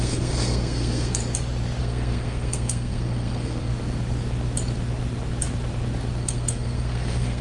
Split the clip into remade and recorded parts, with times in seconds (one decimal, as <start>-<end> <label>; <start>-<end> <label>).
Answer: 0.0-1.2 remade; 1.2-1.8 recorded; 1.8-3.7 remade; 3.7-6.2 recorded; 6.2-7.4 remade